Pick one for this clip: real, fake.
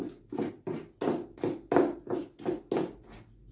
real